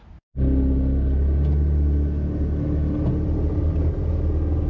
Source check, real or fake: real